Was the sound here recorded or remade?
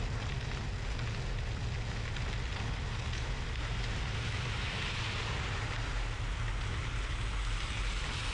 recorded